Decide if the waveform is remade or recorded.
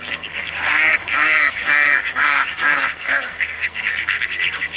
remade